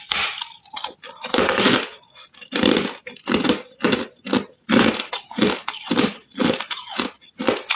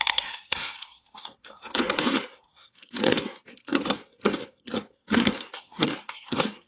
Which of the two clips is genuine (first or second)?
first